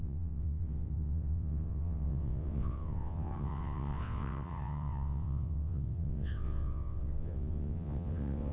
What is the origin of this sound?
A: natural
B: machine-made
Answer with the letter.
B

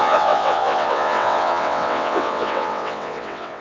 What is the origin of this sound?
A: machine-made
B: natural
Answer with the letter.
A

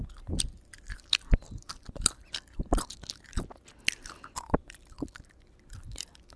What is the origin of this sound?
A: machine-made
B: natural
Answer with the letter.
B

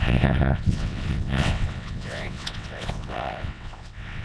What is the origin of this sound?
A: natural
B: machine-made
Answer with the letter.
B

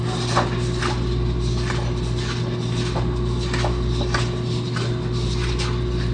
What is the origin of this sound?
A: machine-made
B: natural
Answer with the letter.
B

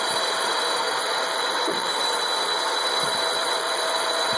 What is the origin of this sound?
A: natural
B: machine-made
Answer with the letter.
B